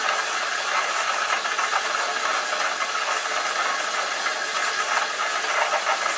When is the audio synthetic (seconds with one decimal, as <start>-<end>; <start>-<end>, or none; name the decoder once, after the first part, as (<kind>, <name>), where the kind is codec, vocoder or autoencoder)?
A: none